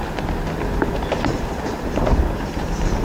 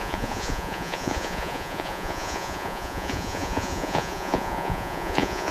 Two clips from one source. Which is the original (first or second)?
first